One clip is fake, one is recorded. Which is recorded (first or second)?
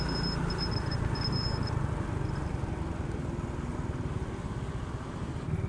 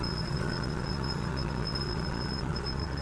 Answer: first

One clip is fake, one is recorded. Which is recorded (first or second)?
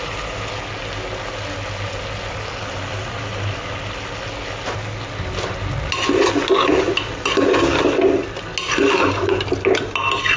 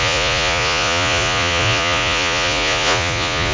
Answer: first